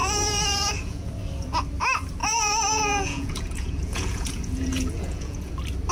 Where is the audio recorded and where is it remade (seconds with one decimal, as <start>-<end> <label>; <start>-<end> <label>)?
0.0-1.1 remade; 1.1-2.2 recorded; 2.2-5.5 remade; 5.5-5.9 recorded